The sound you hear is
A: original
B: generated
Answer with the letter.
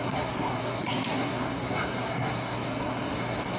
B